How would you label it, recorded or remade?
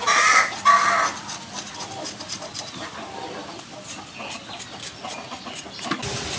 recorded